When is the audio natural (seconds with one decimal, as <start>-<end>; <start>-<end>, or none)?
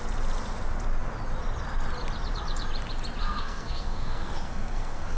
0.0-3.2